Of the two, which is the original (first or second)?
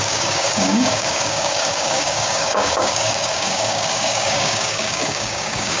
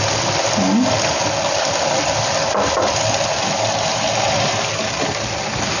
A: second